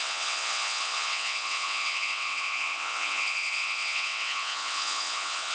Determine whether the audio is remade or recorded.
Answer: remade